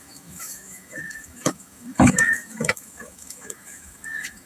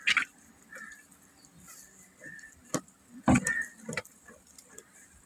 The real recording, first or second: second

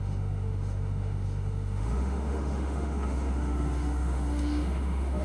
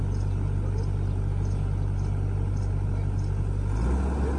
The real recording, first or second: second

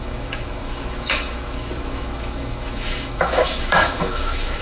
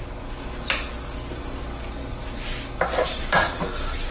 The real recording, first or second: second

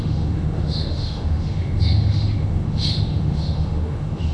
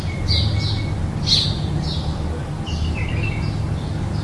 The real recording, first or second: second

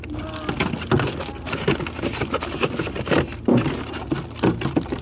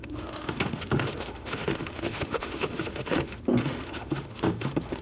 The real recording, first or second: first